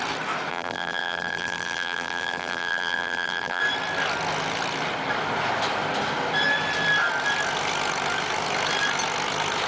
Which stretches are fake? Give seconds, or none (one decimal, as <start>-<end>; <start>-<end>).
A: 0.5-3.6